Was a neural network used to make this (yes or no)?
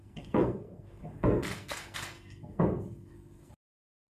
yes